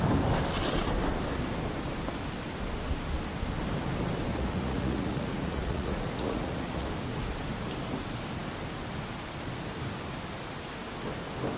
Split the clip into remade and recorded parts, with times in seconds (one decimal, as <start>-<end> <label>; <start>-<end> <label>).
0.0-4.3 recorded; 4.3-6.9 remade; 6.9-11.6 recorded